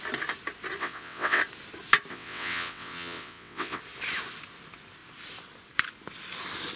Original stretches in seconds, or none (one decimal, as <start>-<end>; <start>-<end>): 0.0-0.8; 1.4-2.1; 3.8-6.8